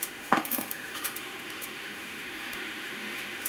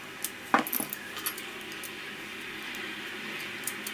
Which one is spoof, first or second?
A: first